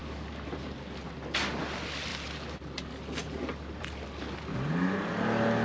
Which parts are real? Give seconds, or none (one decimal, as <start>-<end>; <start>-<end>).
0.0-4.5; 5.1-5.6